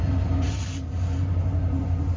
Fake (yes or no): yes